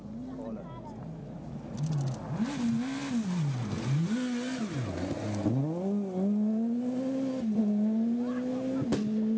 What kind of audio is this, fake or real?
real